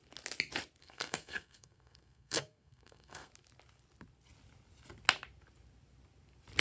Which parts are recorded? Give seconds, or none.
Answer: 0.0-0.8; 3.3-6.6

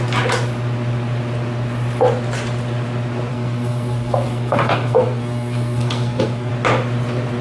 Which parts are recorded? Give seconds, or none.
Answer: 0.0-3.3; 6.5-7.4

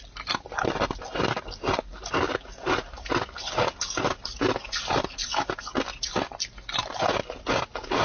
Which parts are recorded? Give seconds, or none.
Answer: 0.0-8.0

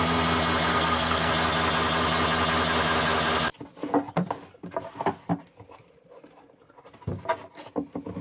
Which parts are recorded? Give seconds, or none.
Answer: 0.0-0.7; 1.3-8.2

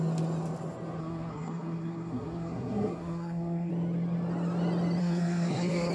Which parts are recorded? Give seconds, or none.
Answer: 0.0-1.0; 3.7-5.0